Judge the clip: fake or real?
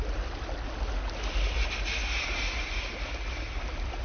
real